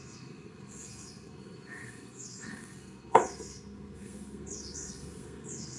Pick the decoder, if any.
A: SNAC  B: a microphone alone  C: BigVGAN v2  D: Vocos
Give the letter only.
A